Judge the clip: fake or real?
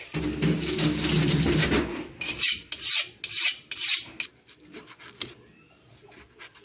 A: real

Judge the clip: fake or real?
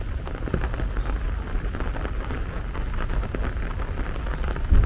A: real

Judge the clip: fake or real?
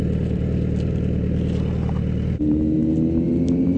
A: real